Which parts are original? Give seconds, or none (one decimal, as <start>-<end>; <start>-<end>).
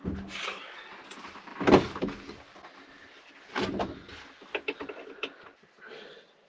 0.0-6.5